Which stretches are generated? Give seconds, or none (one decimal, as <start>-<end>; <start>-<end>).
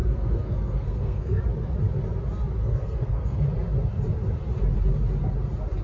0.0-1.4; 2.6-3.4